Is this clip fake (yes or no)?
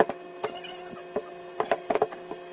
no